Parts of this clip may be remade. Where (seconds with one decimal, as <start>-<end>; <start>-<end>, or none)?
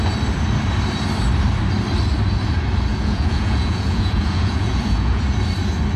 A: 2.9-5.2